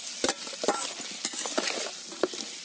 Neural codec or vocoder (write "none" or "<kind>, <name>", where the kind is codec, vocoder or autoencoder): none